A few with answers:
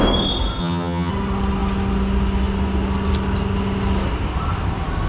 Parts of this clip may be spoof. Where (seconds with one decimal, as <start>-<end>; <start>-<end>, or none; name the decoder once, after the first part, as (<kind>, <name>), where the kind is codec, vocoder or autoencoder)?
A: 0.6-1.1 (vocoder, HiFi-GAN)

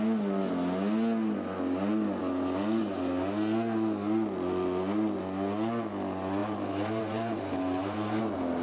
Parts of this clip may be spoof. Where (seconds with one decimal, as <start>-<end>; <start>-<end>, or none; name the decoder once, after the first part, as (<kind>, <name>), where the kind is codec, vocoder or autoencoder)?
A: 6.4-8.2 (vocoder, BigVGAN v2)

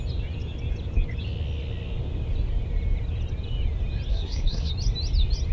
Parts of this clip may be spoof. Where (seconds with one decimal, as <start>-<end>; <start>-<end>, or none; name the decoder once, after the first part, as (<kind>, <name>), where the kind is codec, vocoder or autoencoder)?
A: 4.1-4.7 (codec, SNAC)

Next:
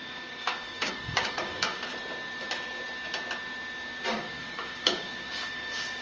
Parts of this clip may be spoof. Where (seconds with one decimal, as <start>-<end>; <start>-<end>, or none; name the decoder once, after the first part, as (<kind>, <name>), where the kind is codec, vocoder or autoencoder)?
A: 0.0-1.9 (codec, DAC); 4.1-6.0

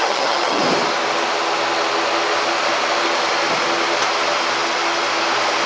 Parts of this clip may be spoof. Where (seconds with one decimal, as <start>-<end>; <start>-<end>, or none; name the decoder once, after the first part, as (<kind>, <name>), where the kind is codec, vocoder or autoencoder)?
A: 0.0-0.6 (vocoder, HiFi-GAN)

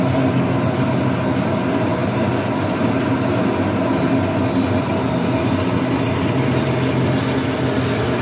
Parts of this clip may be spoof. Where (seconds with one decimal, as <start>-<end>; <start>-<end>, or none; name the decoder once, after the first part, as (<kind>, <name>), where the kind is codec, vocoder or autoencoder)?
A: none